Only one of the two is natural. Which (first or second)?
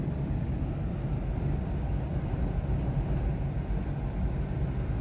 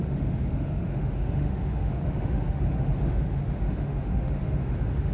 first